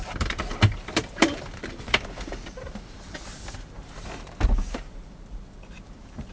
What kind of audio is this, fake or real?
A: fake